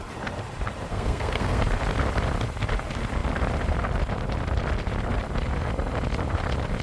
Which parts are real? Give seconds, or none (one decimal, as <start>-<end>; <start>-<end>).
0.0-0.9; 1.6-6.8

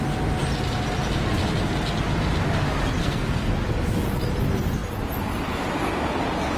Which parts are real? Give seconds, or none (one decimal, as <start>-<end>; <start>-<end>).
0.0-3.0; 3.5-6.6

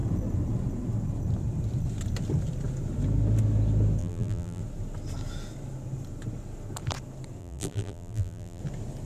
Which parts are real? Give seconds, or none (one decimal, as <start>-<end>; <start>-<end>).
0.0-4.0; 4.6-7.4; 8.6-9.1